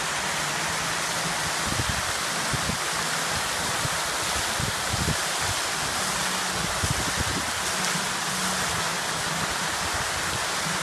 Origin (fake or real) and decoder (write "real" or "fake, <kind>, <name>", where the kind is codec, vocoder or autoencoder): real